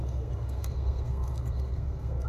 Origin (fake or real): fake